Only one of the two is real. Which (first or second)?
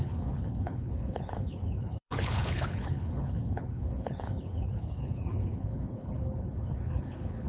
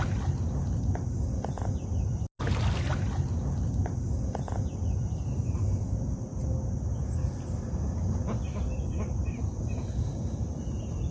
second